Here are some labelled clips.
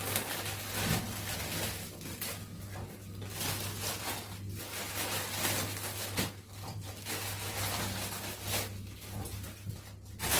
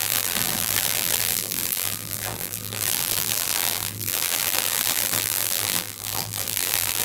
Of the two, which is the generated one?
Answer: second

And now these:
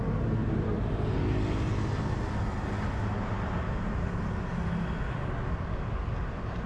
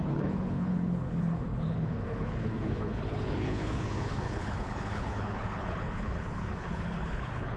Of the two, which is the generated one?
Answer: second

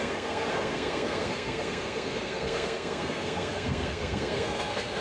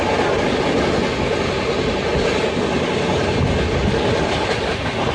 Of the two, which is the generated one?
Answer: first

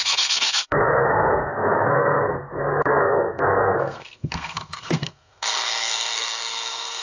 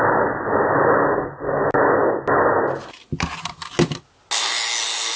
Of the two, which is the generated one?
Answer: first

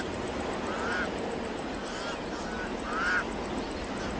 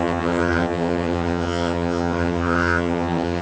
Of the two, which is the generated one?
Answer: second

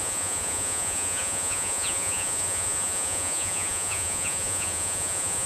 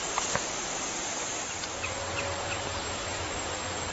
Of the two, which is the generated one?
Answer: first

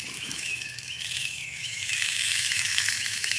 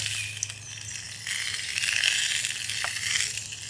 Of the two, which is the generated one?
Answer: first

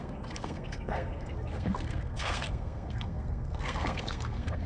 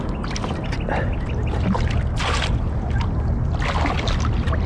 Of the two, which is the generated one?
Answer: first